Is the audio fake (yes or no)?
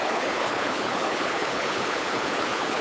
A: yes